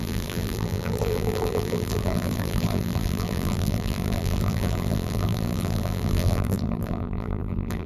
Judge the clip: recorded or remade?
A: remade